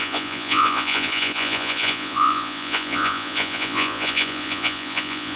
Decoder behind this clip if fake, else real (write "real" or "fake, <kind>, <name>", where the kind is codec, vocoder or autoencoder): fake, vocoder, Vocos